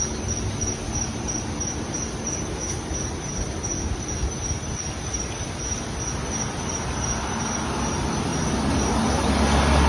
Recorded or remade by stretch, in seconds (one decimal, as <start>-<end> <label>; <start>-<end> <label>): 0.0-9.9 recorded